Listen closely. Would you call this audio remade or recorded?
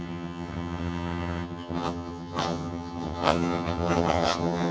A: remade